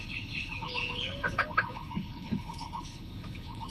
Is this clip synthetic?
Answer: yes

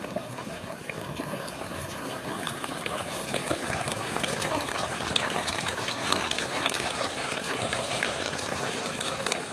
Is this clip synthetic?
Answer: yes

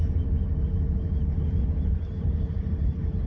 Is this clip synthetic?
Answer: yes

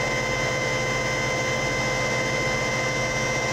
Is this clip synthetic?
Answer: no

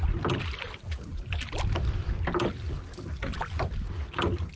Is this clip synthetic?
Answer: no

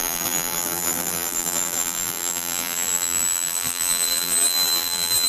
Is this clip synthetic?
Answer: yes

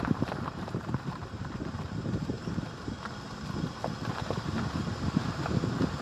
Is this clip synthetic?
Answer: yes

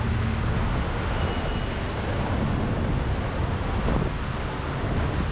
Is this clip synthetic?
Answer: no